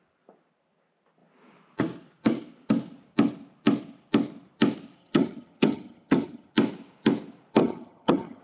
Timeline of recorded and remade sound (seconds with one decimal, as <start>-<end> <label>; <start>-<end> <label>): 0.0-5.0 recorded; 5.0-6.5 remade; 6.5-7.6 recorded; 7.6-8.4 remade